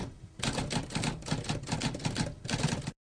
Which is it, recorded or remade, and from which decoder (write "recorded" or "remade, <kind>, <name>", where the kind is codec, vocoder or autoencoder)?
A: recorded